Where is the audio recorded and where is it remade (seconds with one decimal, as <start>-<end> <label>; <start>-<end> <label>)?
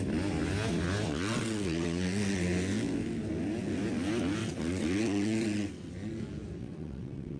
0.0-1.1 recorded; 1.1-2.4 remade; 2.4-4.4 recorded; 4.4-5.9 remade; 5.9-6.6 recorded; 6.6-7.4 remade